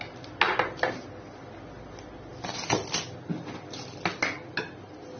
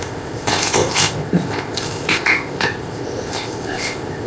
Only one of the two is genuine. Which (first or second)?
first